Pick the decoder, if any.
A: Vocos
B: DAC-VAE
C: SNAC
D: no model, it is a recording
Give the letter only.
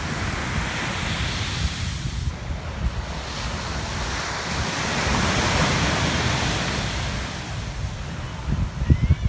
D